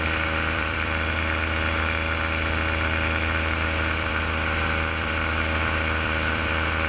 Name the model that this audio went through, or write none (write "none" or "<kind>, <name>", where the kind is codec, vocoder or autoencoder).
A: vocoder, BigVGAN v2